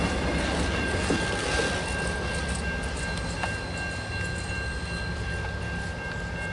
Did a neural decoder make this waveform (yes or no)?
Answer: no